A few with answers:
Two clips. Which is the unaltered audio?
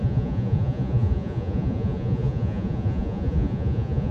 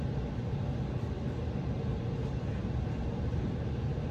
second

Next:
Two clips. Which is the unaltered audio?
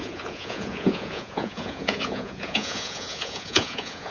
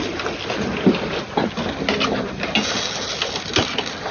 second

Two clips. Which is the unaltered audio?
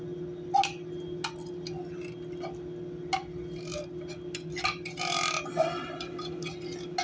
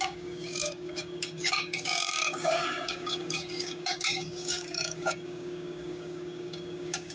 first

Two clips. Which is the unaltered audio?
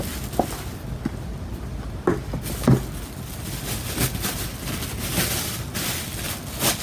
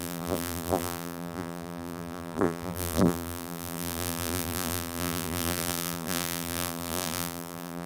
first